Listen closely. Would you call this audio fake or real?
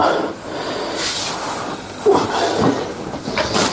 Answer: real